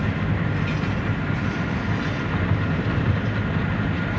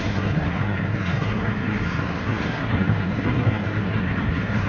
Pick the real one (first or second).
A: first